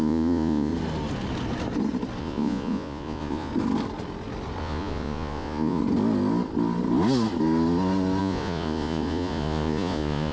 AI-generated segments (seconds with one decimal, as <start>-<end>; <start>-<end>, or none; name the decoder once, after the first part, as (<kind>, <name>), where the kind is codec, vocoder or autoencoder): 0.0-0.7 (vocoder, Vocos); 2.2-3.5; 4.6-5.8; 8.2-10.3